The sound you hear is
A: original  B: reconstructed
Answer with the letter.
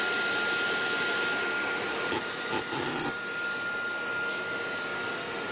A